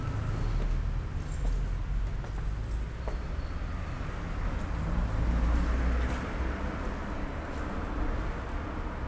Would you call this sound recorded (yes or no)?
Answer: yes